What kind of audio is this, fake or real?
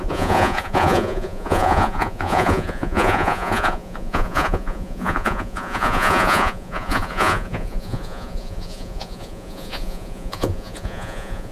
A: fake